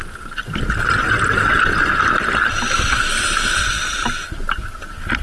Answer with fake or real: real